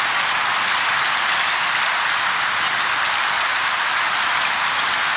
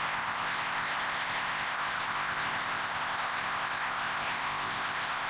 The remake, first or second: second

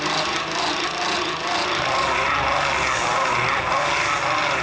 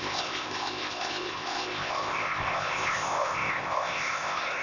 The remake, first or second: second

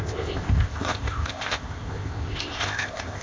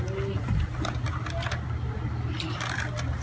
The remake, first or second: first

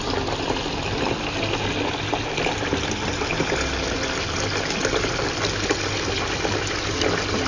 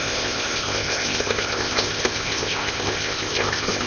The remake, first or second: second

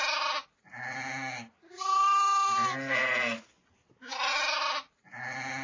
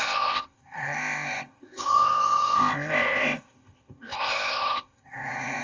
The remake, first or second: second